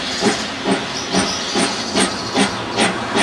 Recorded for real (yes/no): yes